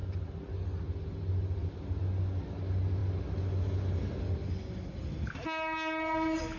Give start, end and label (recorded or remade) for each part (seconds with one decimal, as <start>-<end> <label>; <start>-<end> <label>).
0.0-6.6 recorded